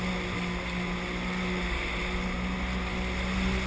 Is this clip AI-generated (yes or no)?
no